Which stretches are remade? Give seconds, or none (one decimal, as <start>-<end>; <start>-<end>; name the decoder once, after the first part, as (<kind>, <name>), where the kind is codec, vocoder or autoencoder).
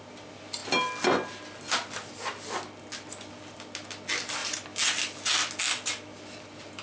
none